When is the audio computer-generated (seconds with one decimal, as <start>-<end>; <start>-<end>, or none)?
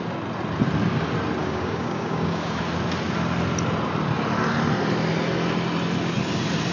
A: 1.4-2.6